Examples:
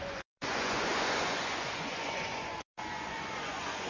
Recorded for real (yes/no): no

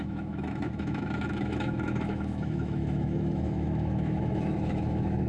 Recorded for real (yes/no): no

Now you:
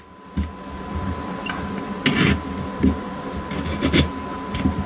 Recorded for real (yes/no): yes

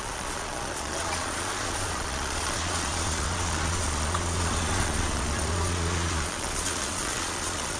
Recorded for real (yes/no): no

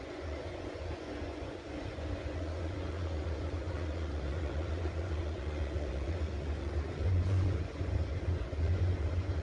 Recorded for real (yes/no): no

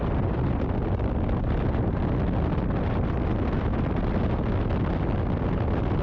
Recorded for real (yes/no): yes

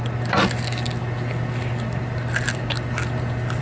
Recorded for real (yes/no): yes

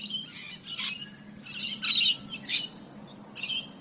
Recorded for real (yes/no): yes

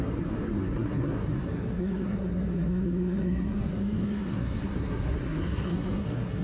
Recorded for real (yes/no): no